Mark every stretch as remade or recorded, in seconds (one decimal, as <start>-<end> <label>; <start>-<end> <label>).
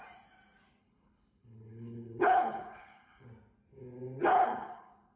0.0-0.8 recorded; 0.8-3.3 remade; 3.3-4.3 recorded; 4.3-5.2 remade